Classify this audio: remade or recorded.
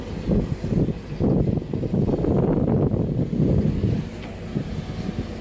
recorded